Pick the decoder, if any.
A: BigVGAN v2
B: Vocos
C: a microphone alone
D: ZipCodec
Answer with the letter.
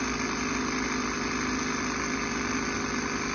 C